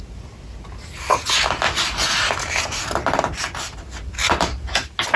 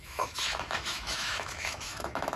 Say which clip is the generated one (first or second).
second